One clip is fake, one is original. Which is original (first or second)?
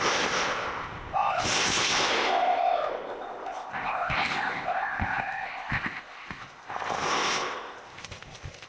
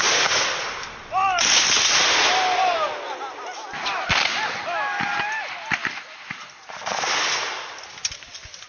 second